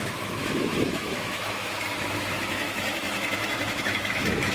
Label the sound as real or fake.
fake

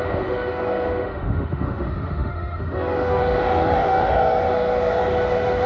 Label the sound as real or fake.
fake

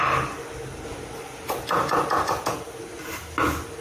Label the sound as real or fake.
real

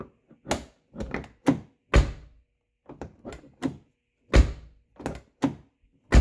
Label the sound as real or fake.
real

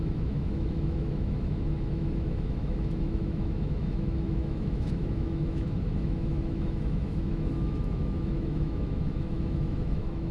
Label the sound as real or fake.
fake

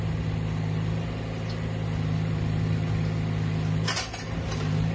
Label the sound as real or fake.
real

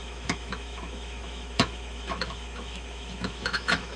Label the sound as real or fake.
fake